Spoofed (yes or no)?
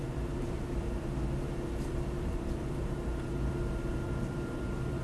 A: yes